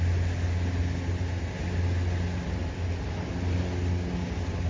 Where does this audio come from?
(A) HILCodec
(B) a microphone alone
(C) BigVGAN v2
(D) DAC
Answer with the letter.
B